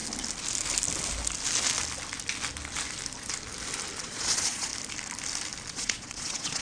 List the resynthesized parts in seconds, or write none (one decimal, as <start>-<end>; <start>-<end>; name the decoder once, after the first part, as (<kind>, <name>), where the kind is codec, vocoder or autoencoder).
4.0-4.7 (vocoder, Vocos); 5.7-6.6